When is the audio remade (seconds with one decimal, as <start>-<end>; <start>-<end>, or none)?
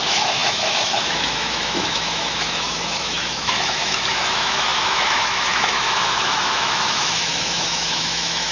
0.0-8.5